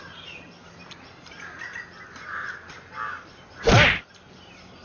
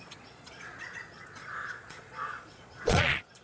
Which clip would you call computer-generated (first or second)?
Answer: second